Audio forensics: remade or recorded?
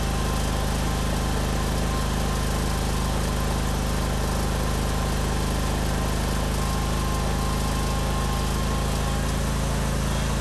recorded